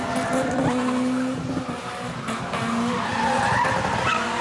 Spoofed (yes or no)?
no